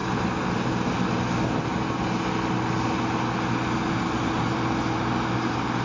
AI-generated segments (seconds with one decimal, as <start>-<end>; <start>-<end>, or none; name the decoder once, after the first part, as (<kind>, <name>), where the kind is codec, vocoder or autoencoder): none